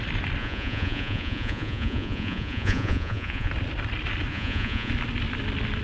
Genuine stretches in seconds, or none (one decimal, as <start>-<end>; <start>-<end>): 0.0-0.4; 3.5-4.3; 4.9-5.8